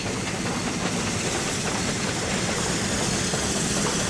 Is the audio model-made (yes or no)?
no